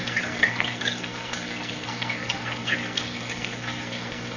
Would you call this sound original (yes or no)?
no